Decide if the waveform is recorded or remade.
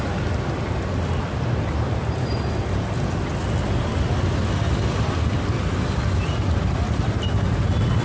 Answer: recorded